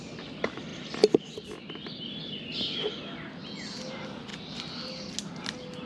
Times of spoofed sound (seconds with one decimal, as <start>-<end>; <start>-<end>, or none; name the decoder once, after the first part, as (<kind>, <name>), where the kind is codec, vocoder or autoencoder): none